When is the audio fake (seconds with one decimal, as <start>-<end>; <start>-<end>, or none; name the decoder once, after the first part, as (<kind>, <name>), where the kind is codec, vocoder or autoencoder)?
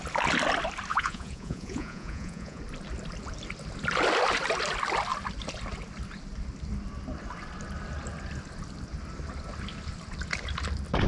0.9-2.6 (vocoder, Vocos)